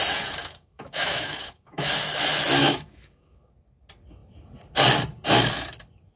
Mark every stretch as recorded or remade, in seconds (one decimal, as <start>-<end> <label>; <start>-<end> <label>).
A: 0.0-0.4 recorded; 0.4-1.9 remade; 1.9-2.6 recorded; 2.6-3.5 remade; 3.5-6.2 recorded